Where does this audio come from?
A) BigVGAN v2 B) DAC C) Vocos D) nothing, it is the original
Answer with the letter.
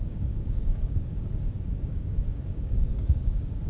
B